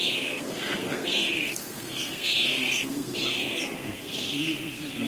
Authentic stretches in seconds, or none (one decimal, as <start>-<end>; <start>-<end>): none